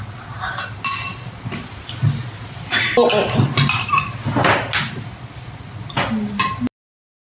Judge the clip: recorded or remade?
recorded